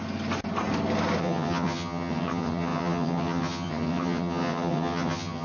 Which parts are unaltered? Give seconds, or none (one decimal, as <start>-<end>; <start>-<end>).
0.0-1.2